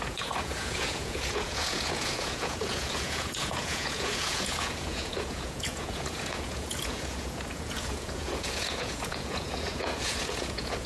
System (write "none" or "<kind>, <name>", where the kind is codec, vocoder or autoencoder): vocoder, Vocos